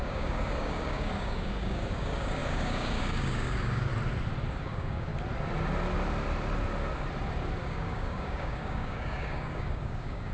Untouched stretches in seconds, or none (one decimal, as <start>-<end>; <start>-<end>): 3.9-4.5; 5.1-7.6